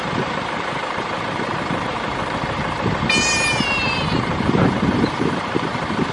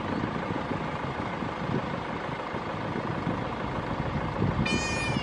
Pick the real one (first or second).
second